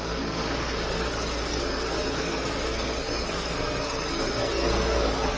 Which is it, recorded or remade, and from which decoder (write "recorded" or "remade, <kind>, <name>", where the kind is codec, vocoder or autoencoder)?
remade, codec, SNAC